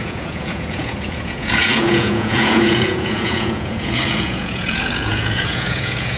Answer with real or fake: fake